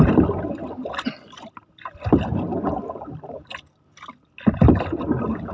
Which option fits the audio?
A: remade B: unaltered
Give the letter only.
B